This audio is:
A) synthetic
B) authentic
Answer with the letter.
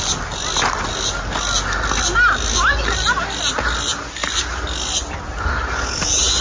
B